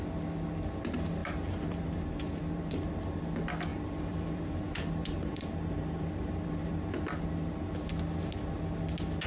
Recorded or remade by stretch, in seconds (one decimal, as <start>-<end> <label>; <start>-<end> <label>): 0.0-1.2 recorded; 1.2-3.2 remade; 3.2-3.7 recorded; 3.7-6.7 remade; 6.7-9.3 recorded